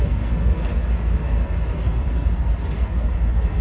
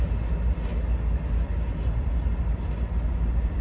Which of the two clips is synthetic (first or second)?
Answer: first